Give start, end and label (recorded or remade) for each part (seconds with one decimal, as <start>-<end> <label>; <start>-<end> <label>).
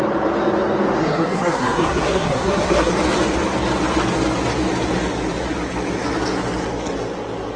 0.0-1.0 recorded; 1.0-2.9 remade; 2.9-7.6 recorded